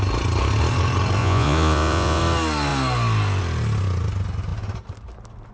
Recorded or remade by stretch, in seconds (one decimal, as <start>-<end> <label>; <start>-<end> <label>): 0.0-1.2 recorded; 1.2-2.2 remade; 2.2-5.5 recorded